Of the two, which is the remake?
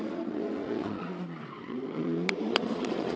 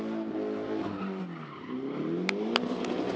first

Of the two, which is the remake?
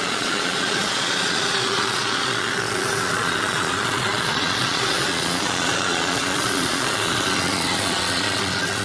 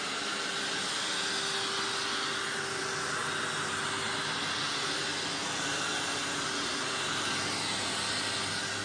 first